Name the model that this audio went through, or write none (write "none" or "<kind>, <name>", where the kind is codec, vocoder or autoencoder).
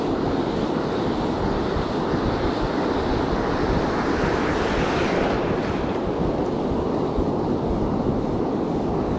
none